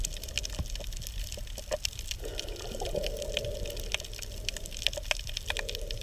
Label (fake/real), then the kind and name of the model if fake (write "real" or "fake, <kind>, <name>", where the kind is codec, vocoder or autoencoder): real